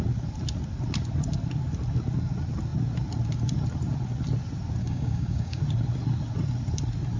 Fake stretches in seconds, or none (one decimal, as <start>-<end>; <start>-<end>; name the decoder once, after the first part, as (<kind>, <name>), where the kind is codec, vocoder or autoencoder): 4.8-5.6 (codec, DAC)